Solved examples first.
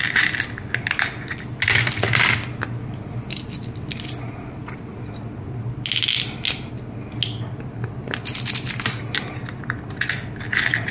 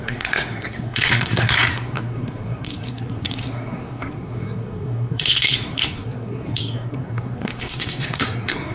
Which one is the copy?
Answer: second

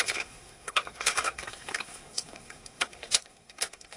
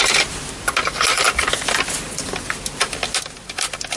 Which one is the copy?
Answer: first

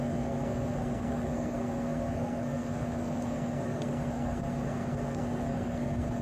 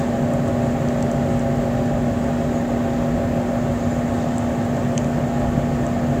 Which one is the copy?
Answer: first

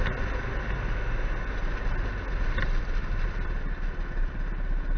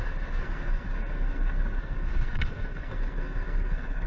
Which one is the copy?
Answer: second